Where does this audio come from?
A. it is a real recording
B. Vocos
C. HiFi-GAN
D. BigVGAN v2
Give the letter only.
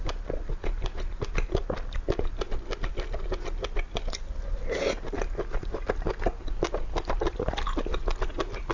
A